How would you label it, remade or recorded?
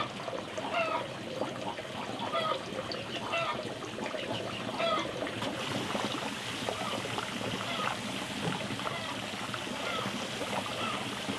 recorded